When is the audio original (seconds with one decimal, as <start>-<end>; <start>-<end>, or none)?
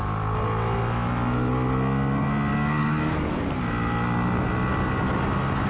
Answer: 0.0-2.5; 3.4-5.7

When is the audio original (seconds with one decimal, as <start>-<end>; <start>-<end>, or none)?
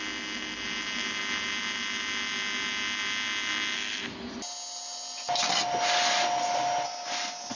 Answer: 0.0-7.6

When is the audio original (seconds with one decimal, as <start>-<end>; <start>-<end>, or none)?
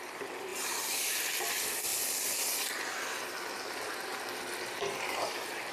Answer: 0.0-0.5; 1.2-5.7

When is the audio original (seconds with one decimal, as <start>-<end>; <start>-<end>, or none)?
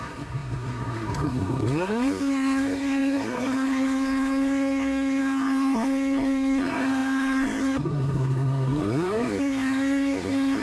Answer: none